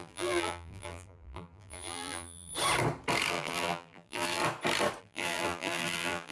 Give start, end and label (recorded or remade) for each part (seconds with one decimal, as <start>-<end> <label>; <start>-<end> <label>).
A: 0.0-2.5 remade; 2.5-3.3 recorded; 3.3-4.4 remade; 4.4-5.0 recorded; 5.0-6.3 remade